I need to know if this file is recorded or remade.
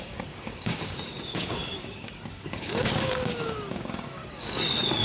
remade